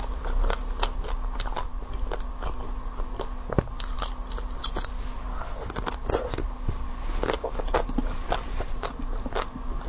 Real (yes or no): yes